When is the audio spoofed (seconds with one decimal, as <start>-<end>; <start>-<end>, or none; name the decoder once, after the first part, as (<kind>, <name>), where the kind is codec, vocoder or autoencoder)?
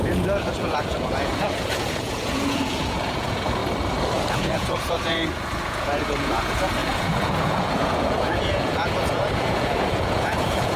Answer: 0.0-3.6 (vocoder, Vocos); 4.3-10.8